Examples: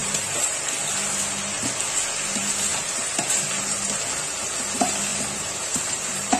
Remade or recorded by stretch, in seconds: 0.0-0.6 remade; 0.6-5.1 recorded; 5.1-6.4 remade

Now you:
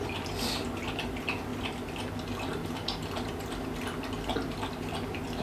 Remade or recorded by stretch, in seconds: 0.0-5.4 recorded